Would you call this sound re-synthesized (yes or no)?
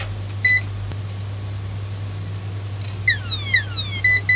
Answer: no